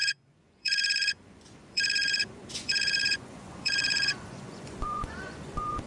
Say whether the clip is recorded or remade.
remade